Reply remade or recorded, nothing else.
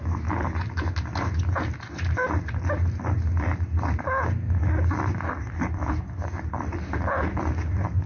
recorded